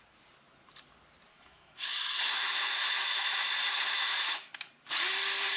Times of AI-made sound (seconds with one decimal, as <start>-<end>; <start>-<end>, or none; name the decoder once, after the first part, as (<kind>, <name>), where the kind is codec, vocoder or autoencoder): 1.3-4.7 (autoencoder, DAC-VAE)